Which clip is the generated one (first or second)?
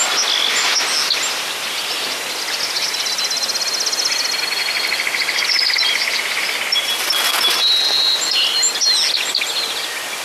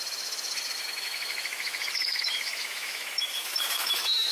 second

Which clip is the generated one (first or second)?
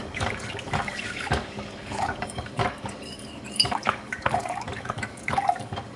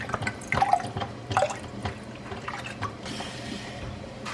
first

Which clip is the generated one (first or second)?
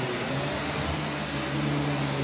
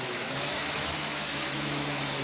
second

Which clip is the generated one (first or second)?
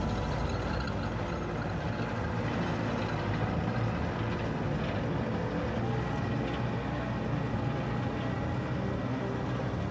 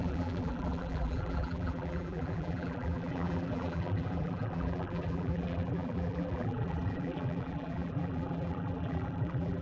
second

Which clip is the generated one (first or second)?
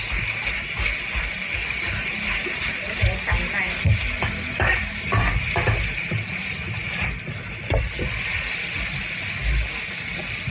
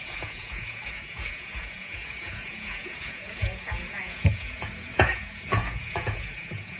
second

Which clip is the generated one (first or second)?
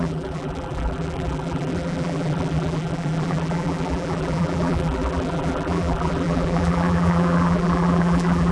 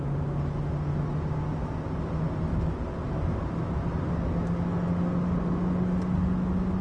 first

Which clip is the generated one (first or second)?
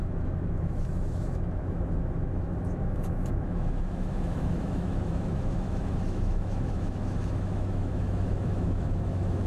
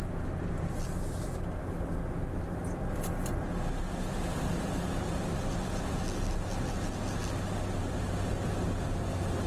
first